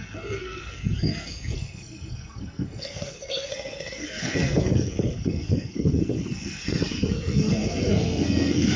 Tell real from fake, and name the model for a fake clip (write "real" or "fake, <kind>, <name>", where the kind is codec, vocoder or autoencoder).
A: fake, codec, SNAC